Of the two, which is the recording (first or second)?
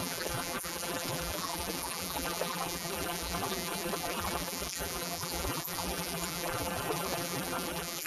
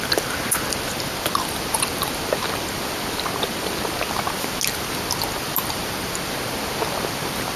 second